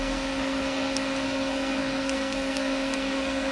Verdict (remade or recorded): remade